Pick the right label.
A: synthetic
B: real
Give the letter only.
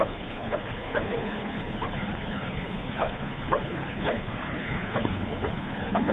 A